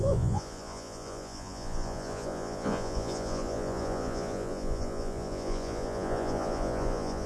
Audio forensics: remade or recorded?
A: remade